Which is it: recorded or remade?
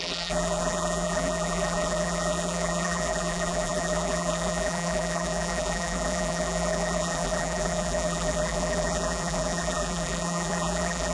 remade